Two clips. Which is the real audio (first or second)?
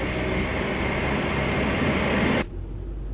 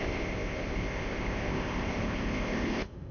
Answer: first